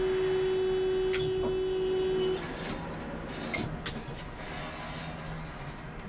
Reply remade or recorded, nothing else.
recorded